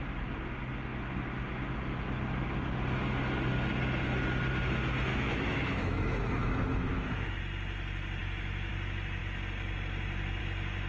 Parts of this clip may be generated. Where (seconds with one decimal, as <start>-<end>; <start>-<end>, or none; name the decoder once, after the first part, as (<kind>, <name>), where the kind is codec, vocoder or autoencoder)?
5.1-7.4 (autoencoder, DAC-VAE); 8.2-8.7